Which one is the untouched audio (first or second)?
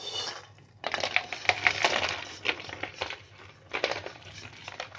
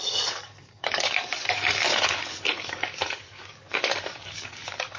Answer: first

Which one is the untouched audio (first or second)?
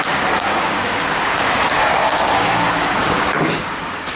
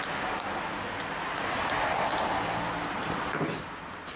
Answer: second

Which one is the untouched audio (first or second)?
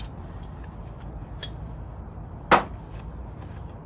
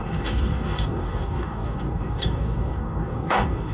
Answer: first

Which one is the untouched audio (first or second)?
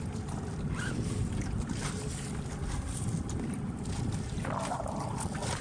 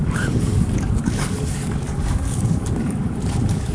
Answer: first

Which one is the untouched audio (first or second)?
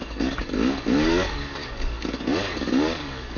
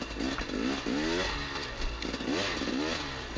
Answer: second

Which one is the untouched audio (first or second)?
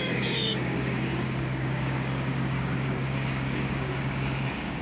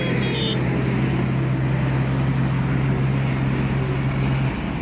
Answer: second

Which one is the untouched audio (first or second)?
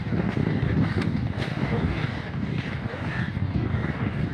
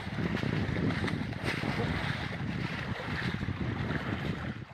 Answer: second